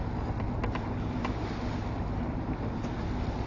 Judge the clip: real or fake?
real